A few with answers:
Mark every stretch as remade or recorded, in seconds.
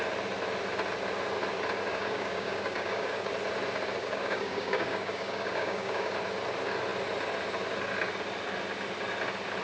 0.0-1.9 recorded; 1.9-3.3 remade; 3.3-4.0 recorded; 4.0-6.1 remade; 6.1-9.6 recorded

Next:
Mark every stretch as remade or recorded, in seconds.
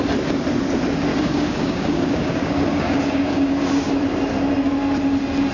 0.0-1.1 recorded; 1.1-3.9 remade; 3.9-5.5 recorded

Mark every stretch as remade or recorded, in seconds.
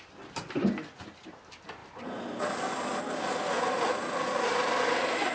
0.0-5.3 recorded